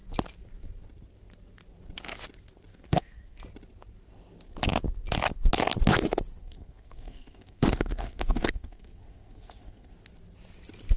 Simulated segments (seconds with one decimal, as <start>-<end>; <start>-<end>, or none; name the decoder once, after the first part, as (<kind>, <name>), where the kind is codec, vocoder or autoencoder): 2.7-3.4 (codec, SNAC); 6.4-9.9